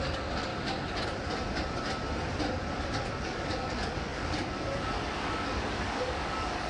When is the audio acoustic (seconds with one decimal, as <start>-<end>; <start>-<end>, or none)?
0.5-3.1